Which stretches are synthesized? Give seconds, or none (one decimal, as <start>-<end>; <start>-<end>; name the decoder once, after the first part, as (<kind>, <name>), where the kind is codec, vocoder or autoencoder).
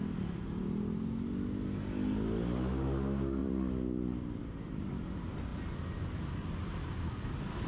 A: 3.4-4.4 (vocoder, BigVGAN v2)